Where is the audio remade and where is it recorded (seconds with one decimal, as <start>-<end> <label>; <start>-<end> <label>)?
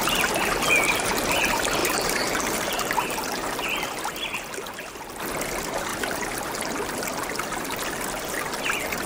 0.0-1.8 recorded; 1.8-3.5 remade; 3.5-9.1 recorded